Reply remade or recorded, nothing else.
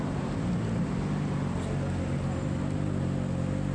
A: recorded